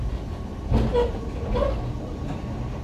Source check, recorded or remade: recorded